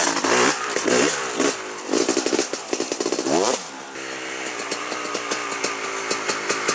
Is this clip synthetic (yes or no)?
no